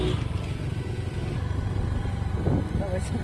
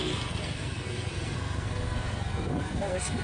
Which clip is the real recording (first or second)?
first